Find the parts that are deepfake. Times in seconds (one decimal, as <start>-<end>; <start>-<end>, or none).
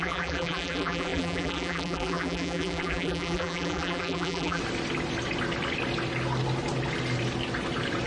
0.0-4.6